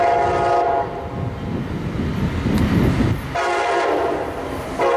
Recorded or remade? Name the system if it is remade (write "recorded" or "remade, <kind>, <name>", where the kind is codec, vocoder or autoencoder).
recorded